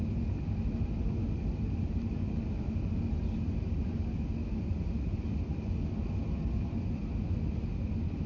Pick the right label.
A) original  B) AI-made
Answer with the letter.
A